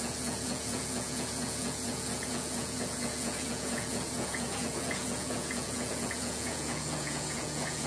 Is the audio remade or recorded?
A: remade